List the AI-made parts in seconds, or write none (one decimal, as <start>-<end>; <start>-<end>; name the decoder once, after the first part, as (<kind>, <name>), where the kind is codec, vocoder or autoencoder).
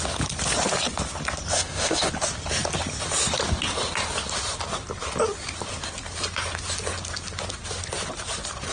1.5-2.1 (autoencoder, DAC-VAE)